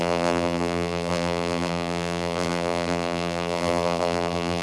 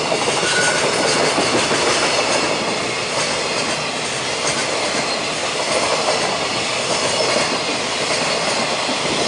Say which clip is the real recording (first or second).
second